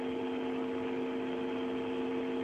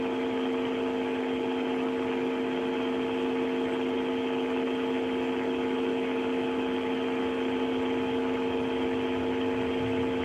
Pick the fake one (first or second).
first